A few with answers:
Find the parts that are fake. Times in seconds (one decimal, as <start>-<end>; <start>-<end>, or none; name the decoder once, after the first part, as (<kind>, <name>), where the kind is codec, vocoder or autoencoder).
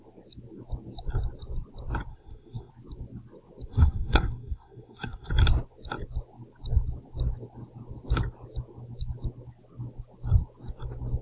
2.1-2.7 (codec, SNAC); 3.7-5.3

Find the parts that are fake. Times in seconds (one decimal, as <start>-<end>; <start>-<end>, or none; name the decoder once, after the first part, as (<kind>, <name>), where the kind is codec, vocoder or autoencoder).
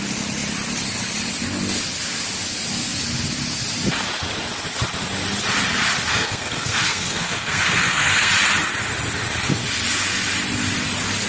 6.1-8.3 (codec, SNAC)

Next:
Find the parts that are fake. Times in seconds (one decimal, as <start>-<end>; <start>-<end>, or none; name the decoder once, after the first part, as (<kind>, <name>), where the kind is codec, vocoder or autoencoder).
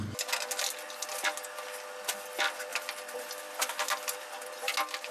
none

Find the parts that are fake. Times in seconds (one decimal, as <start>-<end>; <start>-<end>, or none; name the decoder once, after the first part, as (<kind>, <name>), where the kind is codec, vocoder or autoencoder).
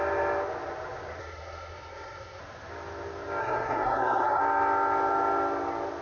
1.2-2.4 (codec, SNAC); 3.4-4.4